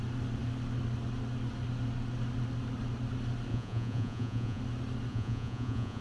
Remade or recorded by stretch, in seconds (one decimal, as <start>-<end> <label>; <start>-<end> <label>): 0.0-3.5 recorded; 3.5-4.6 remade; 4.6-5.1 recorded; 5.1-6.0 remade